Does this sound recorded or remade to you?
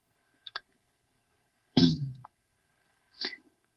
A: remade